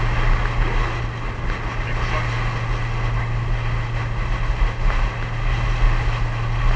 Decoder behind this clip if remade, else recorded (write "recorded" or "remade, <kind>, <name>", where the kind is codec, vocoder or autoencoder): recorded